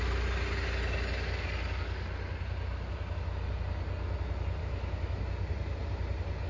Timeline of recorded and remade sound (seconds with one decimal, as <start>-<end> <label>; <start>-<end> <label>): 0.0-4.6 recorded; 4.6-5.2 remade; 5.2-6.5 recorded